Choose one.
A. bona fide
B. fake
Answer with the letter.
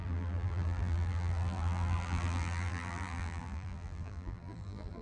B